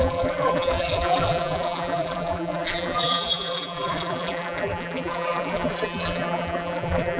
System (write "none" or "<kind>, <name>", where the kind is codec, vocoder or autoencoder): vocoder, BigVGAN v2